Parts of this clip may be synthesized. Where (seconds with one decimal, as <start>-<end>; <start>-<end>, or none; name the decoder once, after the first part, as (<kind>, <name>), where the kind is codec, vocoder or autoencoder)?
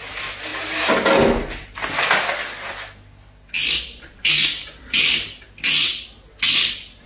none